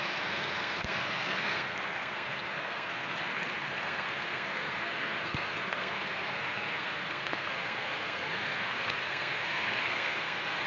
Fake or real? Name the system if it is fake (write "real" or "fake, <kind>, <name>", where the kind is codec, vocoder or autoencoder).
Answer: fake, codec, SNAC